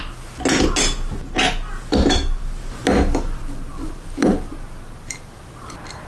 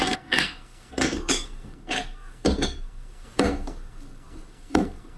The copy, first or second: second